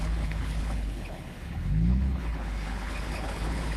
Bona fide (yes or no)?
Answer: no